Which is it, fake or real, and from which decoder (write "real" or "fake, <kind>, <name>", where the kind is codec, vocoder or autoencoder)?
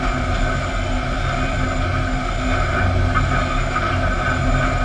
real